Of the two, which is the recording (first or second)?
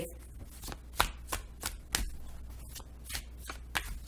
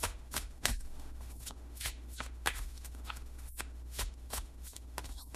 first